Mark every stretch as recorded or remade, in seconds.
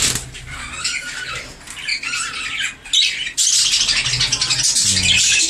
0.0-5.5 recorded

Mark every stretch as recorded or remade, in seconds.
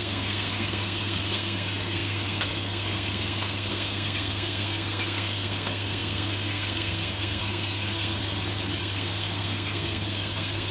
0.0-8.2 remade; 8.2-8.8 recorded; 8.8-10.7 remade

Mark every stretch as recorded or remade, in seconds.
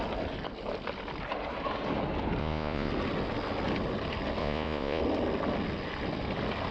0.0-2.4 recorded; 2.4-2.9 remade; 2.9-4.4 recorded; 4.4-5.0 remade; 5.0-6.7 recorded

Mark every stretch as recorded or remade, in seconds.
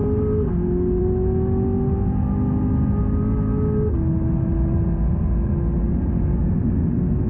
0.0-7.3 recorded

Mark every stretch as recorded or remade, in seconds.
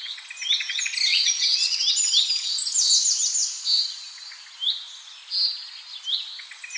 0.0-1.1 recorded; 1.1-1.8 remade; 1.8-6.8 recorded